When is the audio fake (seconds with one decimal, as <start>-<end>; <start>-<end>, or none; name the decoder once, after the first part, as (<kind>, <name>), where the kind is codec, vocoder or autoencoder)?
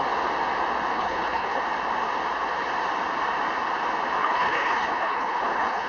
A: 0.9-1.6 (codec, HILCodec); 4.2-5.9